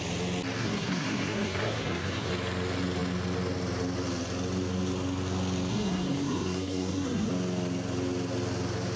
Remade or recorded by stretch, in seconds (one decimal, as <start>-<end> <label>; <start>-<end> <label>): 0.0-0.6 recorded; 0.6-2.3 remade; 2.3-5.7 recorded; 5.7-7.3 remade; 7.3-9.0 recorded